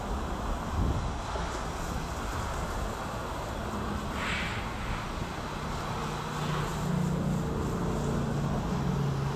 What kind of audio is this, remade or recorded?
recorded